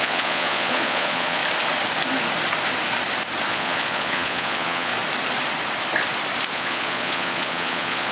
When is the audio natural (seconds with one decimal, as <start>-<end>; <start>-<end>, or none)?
1.4-3.5; 4.9-6.5